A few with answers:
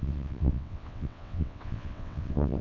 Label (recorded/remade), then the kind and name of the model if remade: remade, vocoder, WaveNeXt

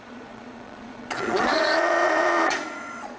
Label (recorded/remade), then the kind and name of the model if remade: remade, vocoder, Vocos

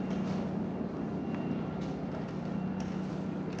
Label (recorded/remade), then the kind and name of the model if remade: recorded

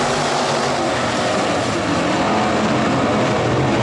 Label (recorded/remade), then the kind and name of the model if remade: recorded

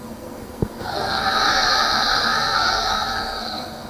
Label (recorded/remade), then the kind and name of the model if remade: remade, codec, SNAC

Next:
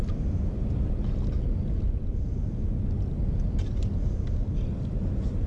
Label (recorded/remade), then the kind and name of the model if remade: recorded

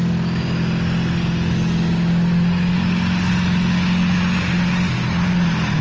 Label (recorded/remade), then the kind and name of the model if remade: recorded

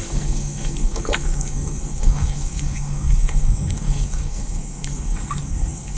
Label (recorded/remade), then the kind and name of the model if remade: remade, codec, SNAC